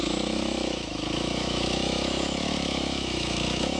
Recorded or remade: remade